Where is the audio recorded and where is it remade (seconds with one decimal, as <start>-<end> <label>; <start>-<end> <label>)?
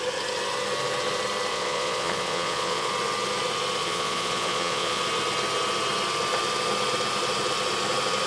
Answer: 0.0-1.5 recorded; 1.5-2.9 remade; 2.9-3.8 recorded; 3.8-5.0 remade; 5.0-8.3 recorded